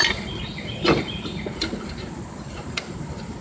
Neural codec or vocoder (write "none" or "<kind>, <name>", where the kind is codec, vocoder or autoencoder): vocoder, BigVGAN v2